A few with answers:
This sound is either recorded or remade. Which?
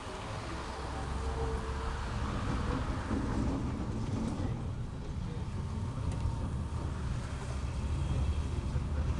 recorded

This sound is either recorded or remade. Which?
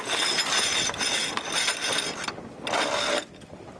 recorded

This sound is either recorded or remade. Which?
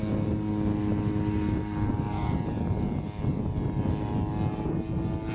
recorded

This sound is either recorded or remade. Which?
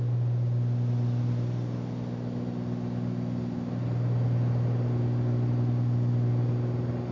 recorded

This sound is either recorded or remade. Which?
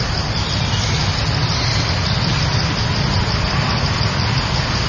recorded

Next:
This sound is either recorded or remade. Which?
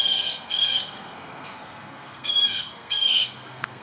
remade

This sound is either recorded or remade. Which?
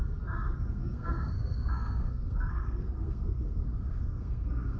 remade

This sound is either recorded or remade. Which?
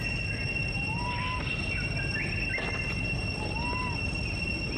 recorded